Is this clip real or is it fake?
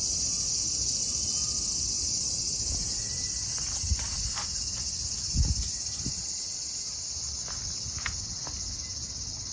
real